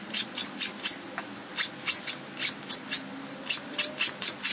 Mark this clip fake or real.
real